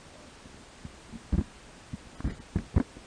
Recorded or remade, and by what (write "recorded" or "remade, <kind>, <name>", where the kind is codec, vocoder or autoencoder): recorded